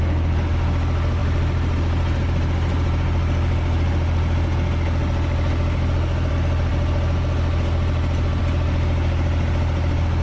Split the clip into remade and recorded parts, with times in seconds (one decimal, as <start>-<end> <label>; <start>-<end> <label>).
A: 0.0-10.2 recorded